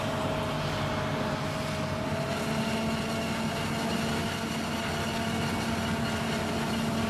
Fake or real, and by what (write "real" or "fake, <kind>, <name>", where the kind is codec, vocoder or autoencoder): real